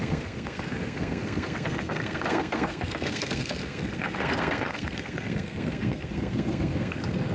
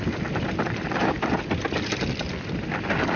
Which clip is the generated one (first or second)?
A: first